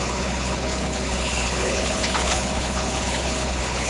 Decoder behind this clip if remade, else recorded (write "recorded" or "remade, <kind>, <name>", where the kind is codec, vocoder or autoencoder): remade, codec, HILCodec